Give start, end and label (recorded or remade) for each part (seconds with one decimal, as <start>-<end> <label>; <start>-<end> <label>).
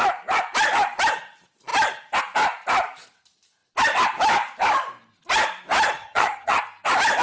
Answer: 0.0-6.0 recorded; 6.0-6.6 remade; 6.6-7.2 recorded